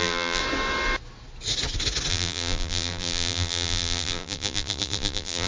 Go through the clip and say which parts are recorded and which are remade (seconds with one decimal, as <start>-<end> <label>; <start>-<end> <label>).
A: 0.0-0.4 remade; 0.4-2.1 recorded; 2.1-5.5 remade